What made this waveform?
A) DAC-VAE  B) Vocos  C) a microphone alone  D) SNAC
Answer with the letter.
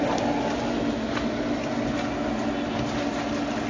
C